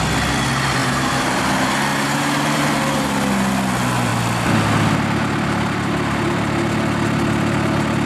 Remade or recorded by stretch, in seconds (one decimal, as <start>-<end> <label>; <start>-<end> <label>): 0.0-0.8 recorded; 0.8-1.4 remade; 1.4-1.9 recorded; 1.9-2.7 remade; 2.7-8.1 recorded